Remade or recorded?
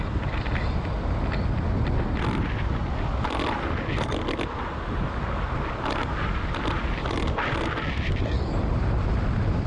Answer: recorded